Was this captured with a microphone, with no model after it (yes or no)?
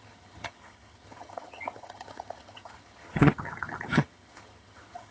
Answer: no